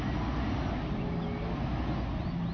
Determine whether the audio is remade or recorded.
recorded